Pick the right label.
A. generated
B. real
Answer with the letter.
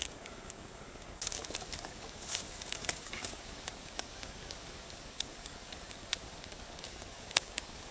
A